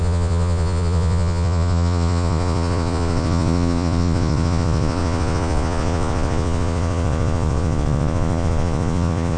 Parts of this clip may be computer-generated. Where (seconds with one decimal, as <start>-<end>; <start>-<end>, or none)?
0.0-9.4